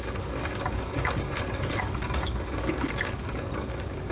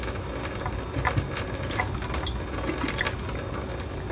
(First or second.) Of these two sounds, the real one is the second